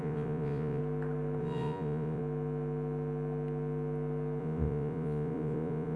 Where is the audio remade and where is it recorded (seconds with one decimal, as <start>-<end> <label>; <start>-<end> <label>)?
0.0-0.8 remade; 0.8-1.4 recorded; 1.4-2.2 remade; 2.2-4.4 recorded; 4.4-6.0 remade